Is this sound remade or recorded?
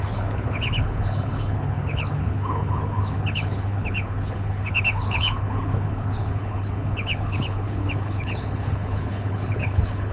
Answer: remade